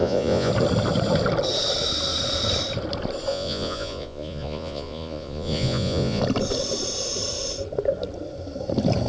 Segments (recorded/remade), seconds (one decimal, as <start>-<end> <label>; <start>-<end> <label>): 0.0-0.5 remade; 0.5-3.3 recorded; 3.3-6.2 remade; 6.2-9.1 recorded